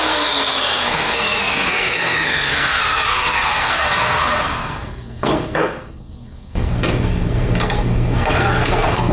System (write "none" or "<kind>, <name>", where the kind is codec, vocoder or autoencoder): codec, SNAC